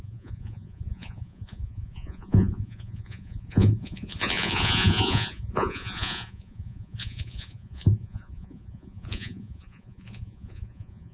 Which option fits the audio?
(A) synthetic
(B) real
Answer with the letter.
A